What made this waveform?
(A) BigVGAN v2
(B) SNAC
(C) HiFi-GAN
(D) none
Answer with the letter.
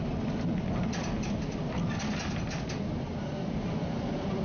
D